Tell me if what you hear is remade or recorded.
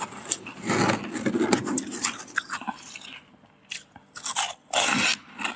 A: recorded